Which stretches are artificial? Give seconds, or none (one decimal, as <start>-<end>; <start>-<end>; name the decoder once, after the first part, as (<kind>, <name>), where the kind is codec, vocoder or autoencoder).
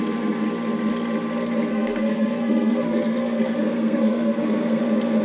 1.7-4.8 (codec, SNAC)